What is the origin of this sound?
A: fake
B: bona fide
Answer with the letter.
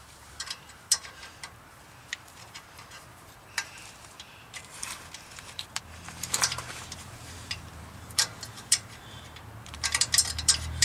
A